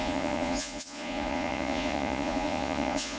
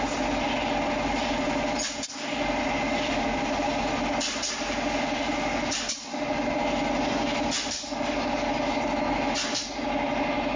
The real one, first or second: second